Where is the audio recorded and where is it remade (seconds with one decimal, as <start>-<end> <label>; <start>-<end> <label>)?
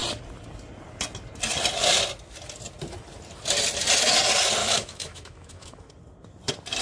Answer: 0.0-4.6 recorded; 4.6-5.9 remade; 5.9-6.8 recorded